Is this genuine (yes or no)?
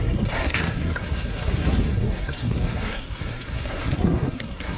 no